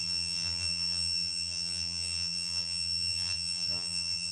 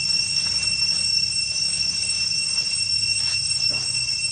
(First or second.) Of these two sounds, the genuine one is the second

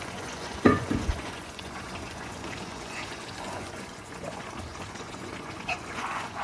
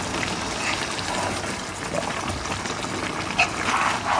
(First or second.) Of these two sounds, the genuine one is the second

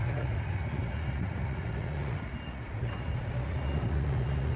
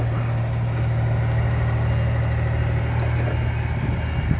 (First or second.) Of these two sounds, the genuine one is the second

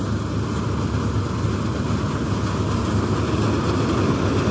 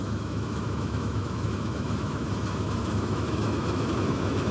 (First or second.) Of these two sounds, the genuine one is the first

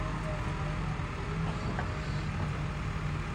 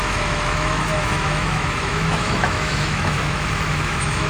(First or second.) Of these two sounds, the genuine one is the first